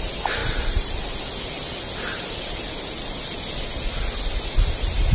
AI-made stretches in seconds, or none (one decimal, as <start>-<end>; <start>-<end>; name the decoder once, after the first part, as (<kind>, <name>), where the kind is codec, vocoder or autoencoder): 0.4-1.1 (vocoder, BigVGAN v2)